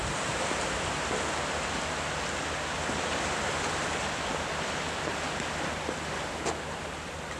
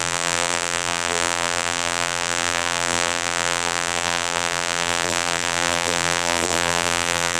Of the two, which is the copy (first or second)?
second